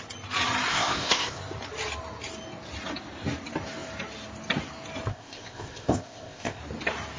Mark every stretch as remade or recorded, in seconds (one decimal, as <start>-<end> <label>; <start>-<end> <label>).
0.0-0.7 recorded; 0.7-1.4 remade; 1.4-5.1 recorded; 5.1-6.6 remade; 6.6-7.2 recorded